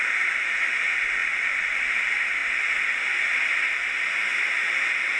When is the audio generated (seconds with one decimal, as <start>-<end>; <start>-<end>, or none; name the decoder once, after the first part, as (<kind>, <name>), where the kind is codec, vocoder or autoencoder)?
none